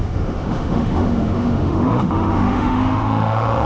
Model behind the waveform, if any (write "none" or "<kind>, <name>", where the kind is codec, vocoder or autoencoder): autoencoder, DAC-VAE